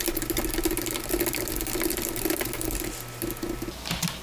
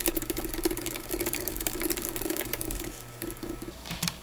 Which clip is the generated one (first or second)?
second